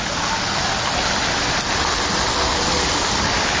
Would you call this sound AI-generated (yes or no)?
no